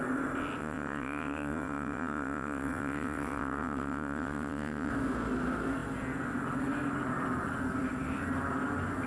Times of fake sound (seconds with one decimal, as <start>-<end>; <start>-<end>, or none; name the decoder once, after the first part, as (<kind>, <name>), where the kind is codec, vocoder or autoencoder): 0.6-4.9 (vocoder, WaveNeXt)